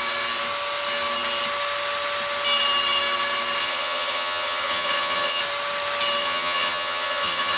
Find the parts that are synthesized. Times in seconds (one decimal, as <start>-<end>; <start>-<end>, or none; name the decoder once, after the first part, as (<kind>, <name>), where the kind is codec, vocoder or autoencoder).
3.6-5.4 (vocoder, HiFi-GAN); 6.2-7.6